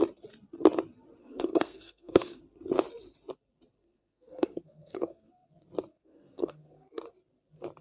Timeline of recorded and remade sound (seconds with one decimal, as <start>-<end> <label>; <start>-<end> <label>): 0.0-1.2 recorded; 1.2-2.4 remade; 2.4-3.8 recorded; 3.8-5.5 remade; 5.5-5.9 recorded; 5.9-7.0 remade; 7.0-7.8 recorded